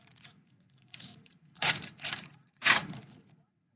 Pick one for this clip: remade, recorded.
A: remade